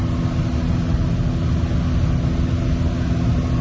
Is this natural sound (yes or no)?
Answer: yes